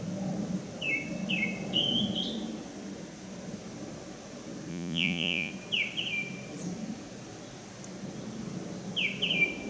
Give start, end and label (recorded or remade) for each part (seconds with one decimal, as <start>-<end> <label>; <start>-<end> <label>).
0.0-4.7 recorded; 4.7-5.5 remade; 5.5-9.7 recorded